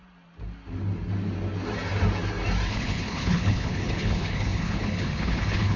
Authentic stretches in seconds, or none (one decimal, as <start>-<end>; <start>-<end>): 0.0-2.7